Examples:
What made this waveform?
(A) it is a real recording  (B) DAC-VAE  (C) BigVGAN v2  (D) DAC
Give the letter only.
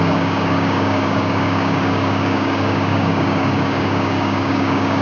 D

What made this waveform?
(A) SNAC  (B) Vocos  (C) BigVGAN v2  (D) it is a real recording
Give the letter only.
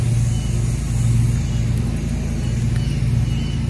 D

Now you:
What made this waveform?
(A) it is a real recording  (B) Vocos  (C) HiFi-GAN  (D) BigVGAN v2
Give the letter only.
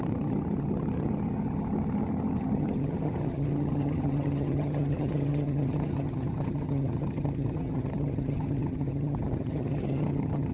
C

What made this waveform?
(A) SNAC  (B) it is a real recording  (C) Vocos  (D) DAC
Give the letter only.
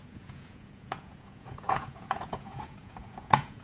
C